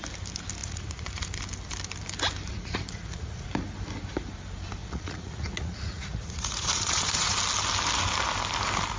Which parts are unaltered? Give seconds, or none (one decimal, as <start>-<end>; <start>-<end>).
0.0-0.6; 1.4-2.5; 3.5-4.8; 7.4-9.0